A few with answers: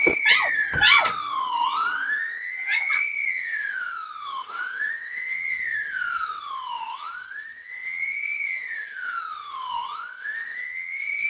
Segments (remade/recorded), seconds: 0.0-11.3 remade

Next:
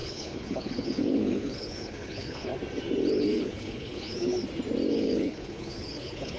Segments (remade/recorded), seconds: 0.0-2.5 remade; 2.5-3.1 recorded; 3.1-4.3 remade; 4.3-4.9 recorded; 4.9-6.4 remade

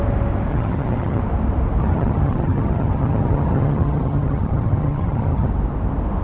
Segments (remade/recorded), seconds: 0.0-0.5 recorded; 0.5-1.2 remade; 1.2-1.8 recorded; 1.8-5.5 remade; 5.5-6.2 recorded

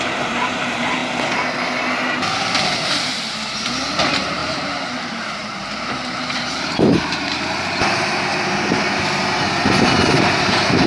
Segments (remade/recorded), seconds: 0.0-1.0 remade; 1.0-2.6 recorded; 2.6-8.3 remade; 8.3-9.4 recorded; 9.4-10.9 remade

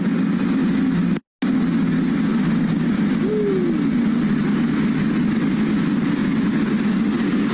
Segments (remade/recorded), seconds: 0.0-7.5 recorded